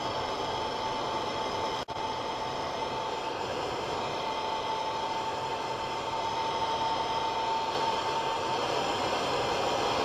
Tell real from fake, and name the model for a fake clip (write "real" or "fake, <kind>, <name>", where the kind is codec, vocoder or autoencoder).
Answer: real